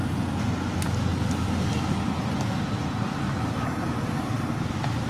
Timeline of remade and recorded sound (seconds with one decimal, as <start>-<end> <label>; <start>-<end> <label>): 0.0-5.1 recorded